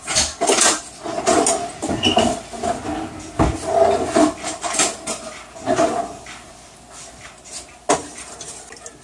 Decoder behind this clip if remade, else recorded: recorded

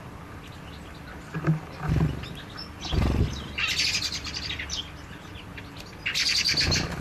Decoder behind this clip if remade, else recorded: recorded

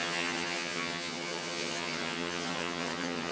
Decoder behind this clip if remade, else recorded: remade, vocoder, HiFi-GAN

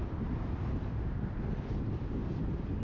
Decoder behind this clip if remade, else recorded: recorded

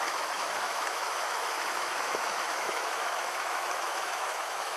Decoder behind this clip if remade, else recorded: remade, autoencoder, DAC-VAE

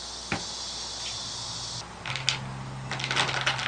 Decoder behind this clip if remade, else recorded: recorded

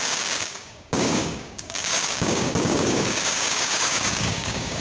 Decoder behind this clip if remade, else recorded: remade, codec, DAC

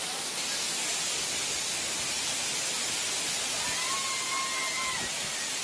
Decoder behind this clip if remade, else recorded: recorded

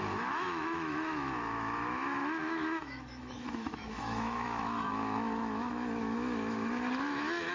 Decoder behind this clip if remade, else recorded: remade, autoencoder, DAC-VAE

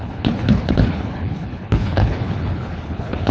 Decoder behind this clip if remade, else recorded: remade, codec, HILCodec